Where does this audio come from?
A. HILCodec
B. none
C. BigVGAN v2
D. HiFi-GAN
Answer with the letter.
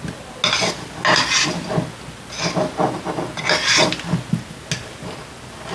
B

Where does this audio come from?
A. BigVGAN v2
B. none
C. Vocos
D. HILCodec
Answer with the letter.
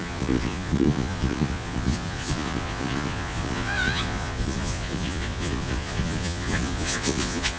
C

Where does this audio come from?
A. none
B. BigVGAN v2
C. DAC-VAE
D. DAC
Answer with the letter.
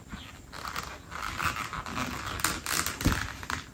A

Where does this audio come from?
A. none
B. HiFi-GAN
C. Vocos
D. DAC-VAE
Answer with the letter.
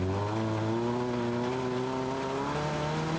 A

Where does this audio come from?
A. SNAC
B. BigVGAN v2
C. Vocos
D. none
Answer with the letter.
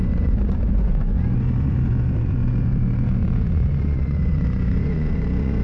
C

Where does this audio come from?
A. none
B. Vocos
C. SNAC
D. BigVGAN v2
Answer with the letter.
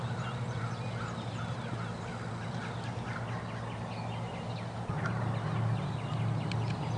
A